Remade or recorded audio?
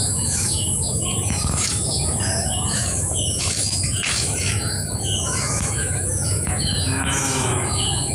remade